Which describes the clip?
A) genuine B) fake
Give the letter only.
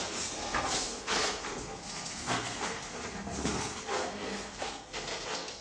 B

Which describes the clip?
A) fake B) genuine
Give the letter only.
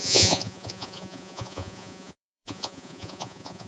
A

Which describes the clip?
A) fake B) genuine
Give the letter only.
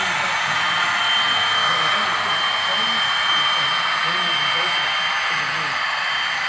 B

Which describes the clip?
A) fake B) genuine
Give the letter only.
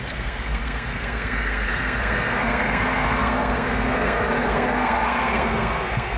A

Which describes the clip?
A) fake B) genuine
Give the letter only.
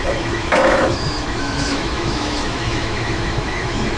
A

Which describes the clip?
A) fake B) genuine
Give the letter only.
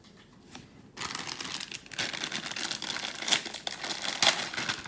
B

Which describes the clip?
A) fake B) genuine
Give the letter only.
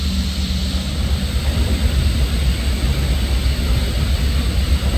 B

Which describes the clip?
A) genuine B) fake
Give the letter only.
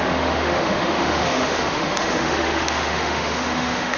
B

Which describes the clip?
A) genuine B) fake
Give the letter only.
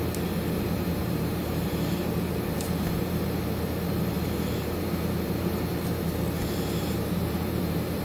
B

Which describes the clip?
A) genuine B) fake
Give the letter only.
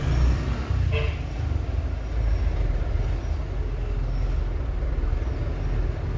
A